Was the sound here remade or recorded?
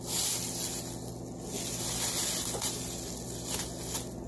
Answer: recorded